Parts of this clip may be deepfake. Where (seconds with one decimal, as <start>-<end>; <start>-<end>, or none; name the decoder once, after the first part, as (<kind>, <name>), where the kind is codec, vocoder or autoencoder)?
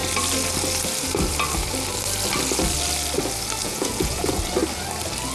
3.6-4.4 (vocoder, Vocos)